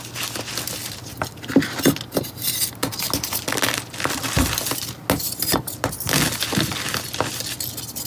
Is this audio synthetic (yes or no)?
no